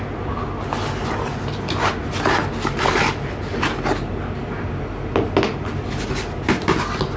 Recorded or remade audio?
recorded